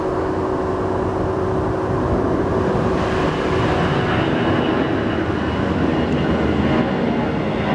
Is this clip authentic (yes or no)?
yes